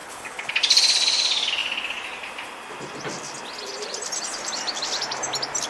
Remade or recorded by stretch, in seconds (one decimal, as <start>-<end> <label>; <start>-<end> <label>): 0.0-0.5 remade; 0.5-5.7 recorded